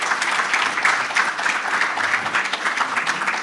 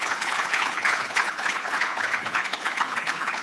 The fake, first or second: second